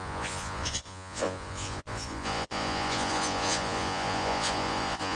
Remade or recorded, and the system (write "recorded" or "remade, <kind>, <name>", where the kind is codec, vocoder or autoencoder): remade, vocoder, Vocos